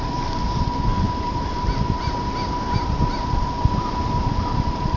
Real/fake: real